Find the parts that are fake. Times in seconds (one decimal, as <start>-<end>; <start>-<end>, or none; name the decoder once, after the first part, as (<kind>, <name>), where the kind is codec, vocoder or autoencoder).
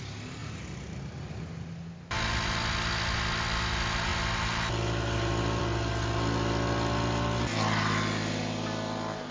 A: none